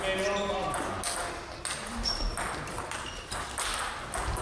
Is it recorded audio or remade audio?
recorded